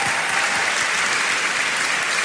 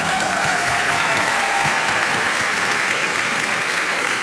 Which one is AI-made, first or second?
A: second